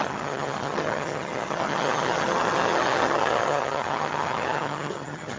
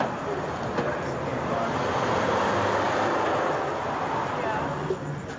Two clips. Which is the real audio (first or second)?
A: second